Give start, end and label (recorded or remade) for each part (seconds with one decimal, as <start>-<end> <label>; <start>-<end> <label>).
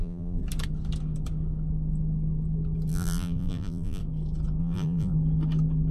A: 0.0-0.4 remade; 0.4-2.9 recorded; 2.9-4.0 remade; 4.0-4.6 recorded; 4.6-5.1 remade; 5.1-5.9 recorded